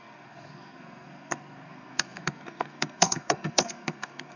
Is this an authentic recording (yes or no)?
no